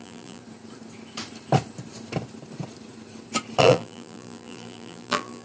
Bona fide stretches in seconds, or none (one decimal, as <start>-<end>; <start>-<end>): 0.4-3.6